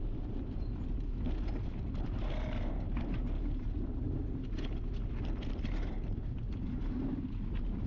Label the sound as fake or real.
real